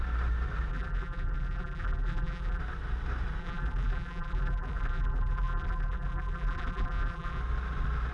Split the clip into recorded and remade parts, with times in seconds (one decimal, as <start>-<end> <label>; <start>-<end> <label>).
0.0-0.7 recorded; 0.7-2.6 remade; 2.6-3.4 recorded; 3.4-7.4 remade; 7.4-8.1 recorded